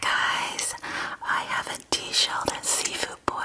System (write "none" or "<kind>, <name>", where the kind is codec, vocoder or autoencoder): none